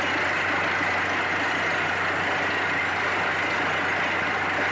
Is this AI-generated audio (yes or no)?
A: no